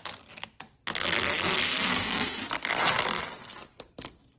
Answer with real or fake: real